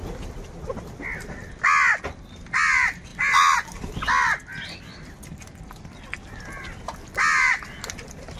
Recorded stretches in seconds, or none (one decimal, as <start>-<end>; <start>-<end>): 0.0-8.4